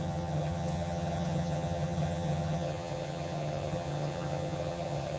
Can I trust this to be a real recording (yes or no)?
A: no